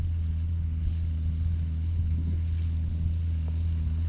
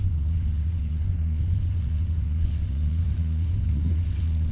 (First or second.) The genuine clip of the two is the first